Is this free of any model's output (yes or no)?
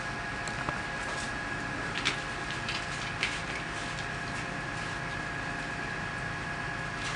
yes